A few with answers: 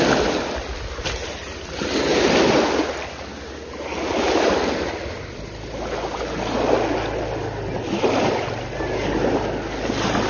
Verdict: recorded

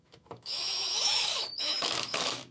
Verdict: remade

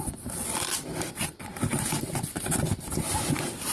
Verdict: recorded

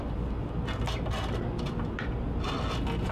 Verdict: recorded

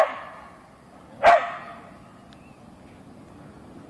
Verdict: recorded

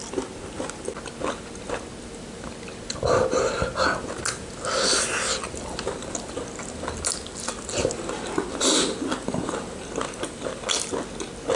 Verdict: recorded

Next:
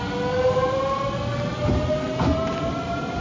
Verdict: recorded